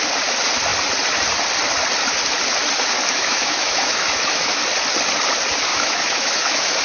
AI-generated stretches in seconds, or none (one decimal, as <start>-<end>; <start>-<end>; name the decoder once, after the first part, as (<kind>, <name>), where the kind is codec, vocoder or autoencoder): 3.0-4.6 (autoencoder, DAC-VAE); 5.7-6.8